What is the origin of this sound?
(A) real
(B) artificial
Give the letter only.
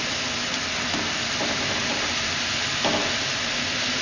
A